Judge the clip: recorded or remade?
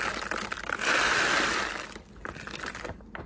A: recorded